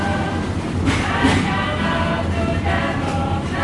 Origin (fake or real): real